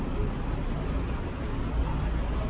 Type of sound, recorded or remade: recorded